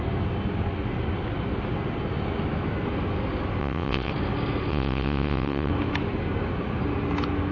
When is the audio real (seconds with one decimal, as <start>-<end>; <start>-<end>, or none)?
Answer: 0.0-3.6; 4.1-4.7; 5.7-7.5